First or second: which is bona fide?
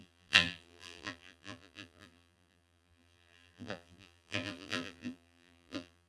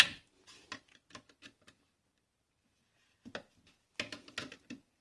second